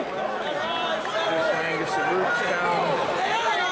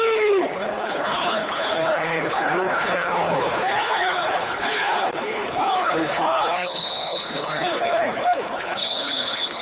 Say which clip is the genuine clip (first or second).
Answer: first